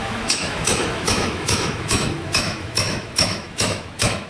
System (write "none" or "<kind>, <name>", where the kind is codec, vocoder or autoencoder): autoencoder, DAC-VAE